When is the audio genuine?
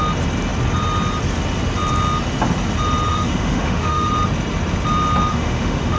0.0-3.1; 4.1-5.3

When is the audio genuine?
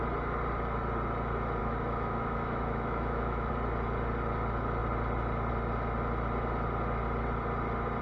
0.0-1.6; 3.5-8.0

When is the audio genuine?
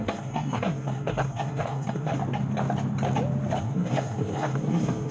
2.1-3.6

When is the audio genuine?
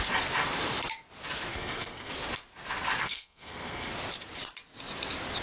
0.0-1.5; 2.1-3.0; 3.9-5.4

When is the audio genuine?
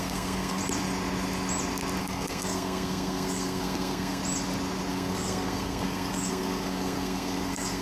0.6-2.0; 4.2-4.9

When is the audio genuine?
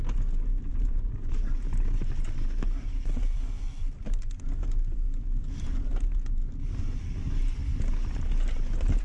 0.0-0.7; 1.4-9.0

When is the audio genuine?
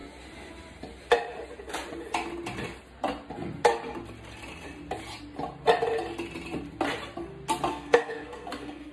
0.0-7.7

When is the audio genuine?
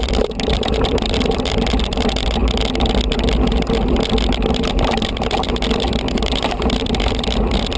2.4-4.7